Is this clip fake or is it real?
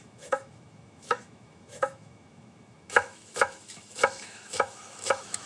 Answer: fake